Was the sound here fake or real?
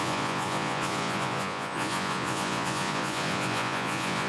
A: fake